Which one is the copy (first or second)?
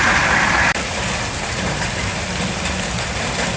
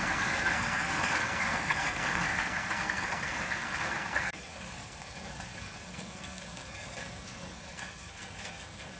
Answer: second